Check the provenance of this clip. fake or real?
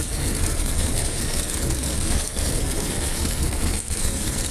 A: fake